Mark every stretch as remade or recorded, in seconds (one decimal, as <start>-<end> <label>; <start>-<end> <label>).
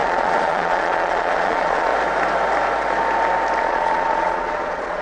0.0-1.9 remade; 1.9-3.6 recorded; 3.6-5.0 remade